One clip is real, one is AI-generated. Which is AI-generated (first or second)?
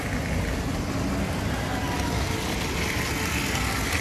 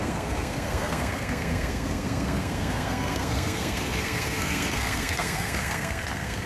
second